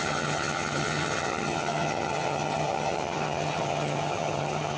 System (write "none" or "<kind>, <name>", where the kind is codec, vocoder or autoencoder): vocoder, HiFi-GAN